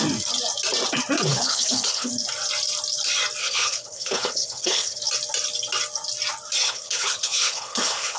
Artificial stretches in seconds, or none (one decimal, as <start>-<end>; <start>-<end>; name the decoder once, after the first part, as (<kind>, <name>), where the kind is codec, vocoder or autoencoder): 1.3-2.1 (codec, HILCodec); 3.4-5.0; 6.6-8.2